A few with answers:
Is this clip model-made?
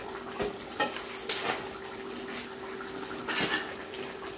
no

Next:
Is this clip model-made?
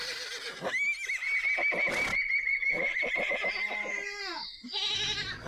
no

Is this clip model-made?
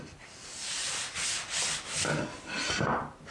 no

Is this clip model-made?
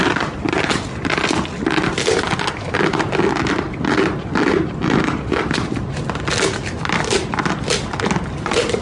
no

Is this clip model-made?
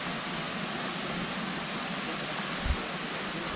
no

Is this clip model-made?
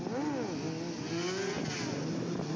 no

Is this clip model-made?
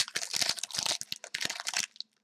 no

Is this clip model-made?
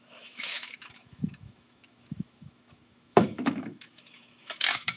yes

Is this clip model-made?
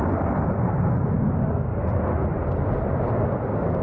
no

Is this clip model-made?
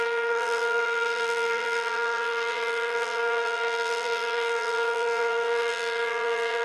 yes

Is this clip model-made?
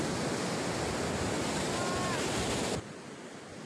no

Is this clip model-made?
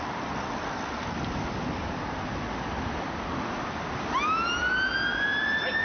no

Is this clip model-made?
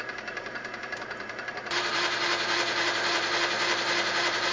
yes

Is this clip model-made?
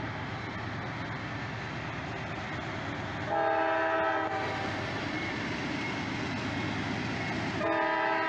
no